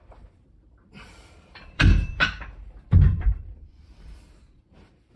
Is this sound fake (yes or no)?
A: yes